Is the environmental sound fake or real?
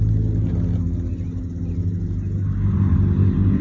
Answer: real